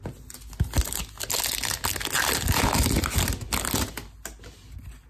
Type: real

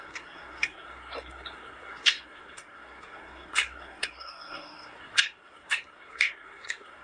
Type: fake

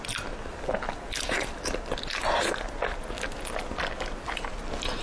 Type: real